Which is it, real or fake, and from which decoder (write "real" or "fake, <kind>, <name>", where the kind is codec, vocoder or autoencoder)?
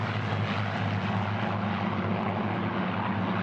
real